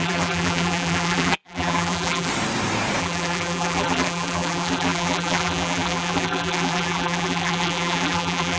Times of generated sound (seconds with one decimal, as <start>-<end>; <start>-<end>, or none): 0.0-2.3; 3.0-8.6